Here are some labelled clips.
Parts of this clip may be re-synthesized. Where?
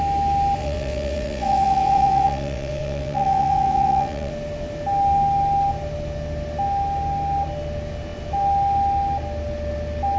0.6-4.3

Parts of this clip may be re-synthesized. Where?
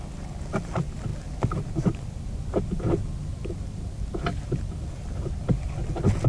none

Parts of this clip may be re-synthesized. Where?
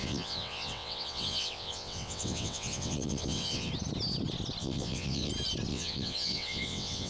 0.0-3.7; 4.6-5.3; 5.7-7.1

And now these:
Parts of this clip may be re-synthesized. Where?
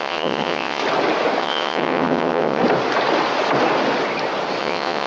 0.0-0.8; 1.4-2.6; 4.6-5.1